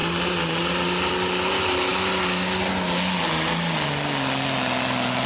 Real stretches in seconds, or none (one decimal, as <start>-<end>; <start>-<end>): 0.0-5.3